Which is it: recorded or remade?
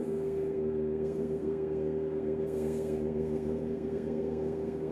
remade